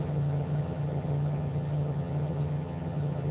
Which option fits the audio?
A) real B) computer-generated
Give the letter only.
B